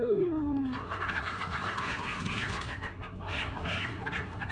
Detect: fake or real fake